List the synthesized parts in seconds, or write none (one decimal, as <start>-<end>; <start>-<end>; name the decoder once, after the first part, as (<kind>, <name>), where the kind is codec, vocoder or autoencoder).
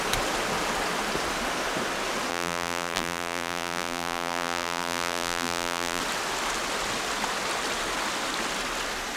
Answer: 2.3-6.0 (vocoder, BigVGAN v2)